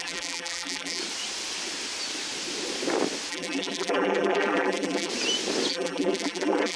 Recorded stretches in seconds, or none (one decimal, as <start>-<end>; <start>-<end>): 1.0-3.3; 5.1-5.7